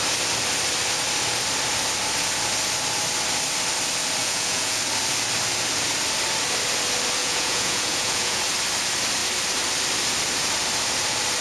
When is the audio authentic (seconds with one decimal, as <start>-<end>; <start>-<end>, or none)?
0.0-4.2; 4.8-7.2; 8.4-11.4